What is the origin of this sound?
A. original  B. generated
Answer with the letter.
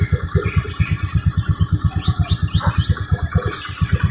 A